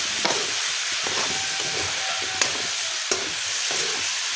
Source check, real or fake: real